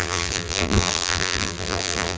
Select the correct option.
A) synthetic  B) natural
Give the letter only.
A